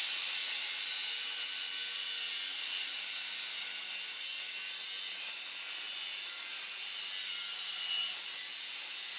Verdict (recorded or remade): recorded